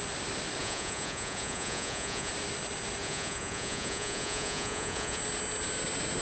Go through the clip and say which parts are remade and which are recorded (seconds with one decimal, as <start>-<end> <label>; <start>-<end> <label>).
0.0-0.6 recorded; 0.6-2.3 remade; 2.3-3.0 recorded; 3.0-5.2 remade; 5.2-6.2 recorded